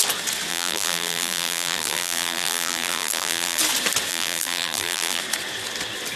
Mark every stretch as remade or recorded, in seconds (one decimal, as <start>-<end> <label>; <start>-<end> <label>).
0.0-0.5 recorded; 0.5-3.6 remade; 3.6-4.1 recorded; 4.1-5.2 remade; 5.2-6.2 recorded